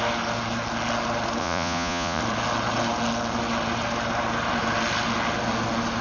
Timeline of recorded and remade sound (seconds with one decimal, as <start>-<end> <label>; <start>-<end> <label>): 0.0-1.4 recorded; 1.4-2.2 remade; 2.2-6.0 recorded